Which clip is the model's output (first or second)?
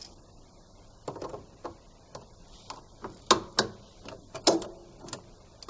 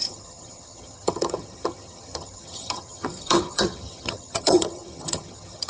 second